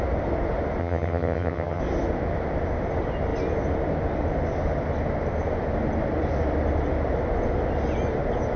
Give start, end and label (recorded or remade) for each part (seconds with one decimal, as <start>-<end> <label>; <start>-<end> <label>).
0.0-0.8 recorded; 0.8-1.8 remade; 1.8-8.6 recorded